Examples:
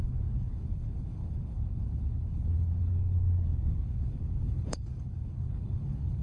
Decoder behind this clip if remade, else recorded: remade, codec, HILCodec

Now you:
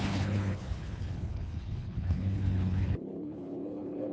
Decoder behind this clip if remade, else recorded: remade, codec, HILCodec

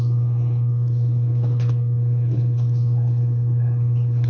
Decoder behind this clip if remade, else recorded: remade, codec, HILCodec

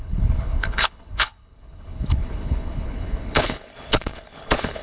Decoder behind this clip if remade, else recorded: remade, codec, HILCodec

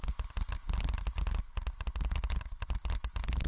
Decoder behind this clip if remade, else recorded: recorded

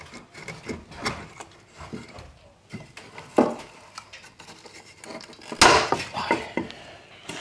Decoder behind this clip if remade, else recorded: recorded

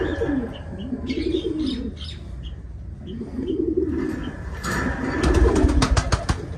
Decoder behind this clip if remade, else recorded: recorded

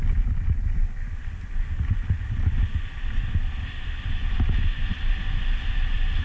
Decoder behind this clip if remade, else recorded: recorded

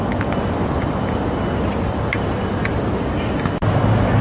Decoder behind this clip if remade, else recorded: recorded